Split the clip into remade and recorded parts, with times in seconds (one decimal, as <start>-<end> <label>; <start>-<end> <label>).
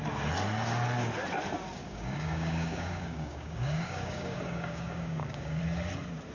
0.0-1.8 recorded; 1.8-5.6 remade; 5.6-6.3 recorded